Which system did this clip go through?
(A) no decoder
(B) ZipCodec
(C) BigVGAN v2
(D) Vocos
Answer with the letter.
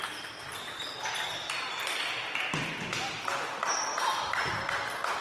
A